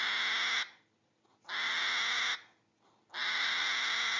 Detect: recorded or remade recorded